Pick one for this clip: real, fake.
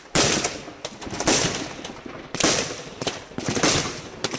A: real